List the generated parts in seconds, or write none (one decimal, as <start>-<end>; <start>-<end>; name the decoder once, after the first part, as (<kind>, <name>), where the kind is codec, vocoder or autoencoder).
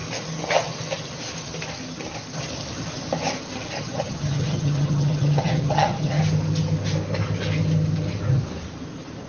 3.8-6.2 (vocoder, HiFi-GAN)